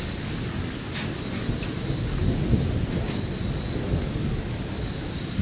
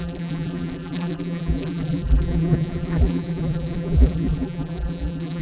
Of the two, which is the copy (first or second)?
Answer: second